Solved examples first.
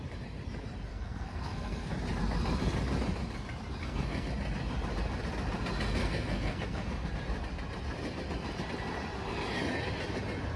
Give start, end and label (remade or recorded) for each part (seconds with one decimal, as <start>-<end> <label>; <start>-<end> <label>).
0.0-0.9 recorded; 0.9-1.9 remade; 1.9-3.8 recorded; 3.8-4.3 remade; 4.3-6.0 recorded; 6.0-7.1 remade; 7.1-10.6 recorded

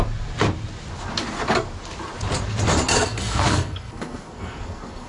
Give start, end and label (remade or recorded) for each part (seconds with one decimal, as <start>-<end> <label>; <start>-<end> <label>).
0.0-2.9 recorded; 2.9-5.1 remade

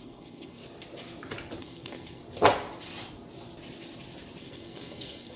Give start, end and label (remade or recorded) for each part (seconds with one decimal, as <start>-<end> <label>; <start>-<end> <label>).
0.0-0.6 remade; 0.6-1.6 recorded; 1.6-2.2 remade; 2.2-4.4 recorded; 4.4-5.4 remade